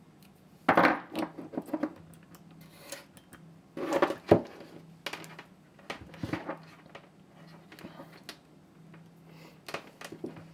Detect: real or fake real